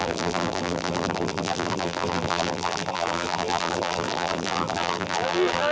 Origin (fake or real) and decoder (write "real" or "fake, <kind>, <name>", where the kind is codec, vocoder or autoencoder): fake, vocoder, BigVGAN v2